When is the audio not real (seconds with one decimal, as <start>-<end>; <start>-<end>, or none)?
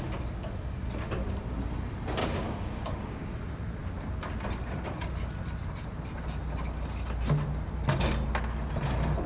2.2-3.3